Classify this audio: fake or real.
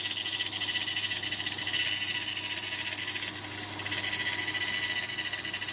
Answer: real